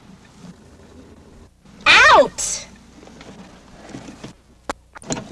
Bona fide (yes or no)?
yes